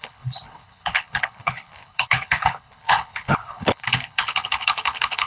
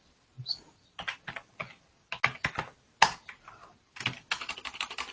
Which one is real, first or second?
second